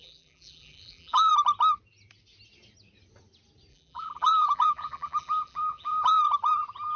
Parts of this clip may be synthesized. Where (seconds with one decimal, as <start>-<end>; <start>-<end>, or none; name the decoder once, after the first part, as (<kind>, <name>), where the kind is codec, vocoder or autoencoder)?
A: 0.0-1.3 (vocoder, BigVGAN v2); 3.7-6.2

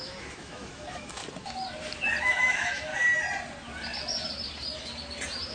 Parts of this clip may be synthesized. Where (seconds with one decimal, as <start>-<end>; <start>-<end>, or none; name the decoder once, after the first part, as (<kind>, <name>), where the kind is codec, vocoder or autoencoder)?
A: 0.0-1.2 (autoencoder, DAC-VAE); 2.2-2.9